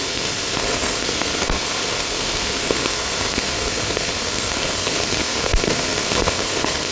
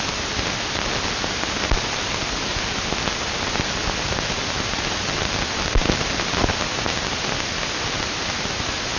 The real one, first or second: second